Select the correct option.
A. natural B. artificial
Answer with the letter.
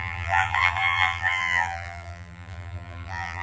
B